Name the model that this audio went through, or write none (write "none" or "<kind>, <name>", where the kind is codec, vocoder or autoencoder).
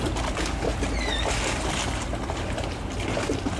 none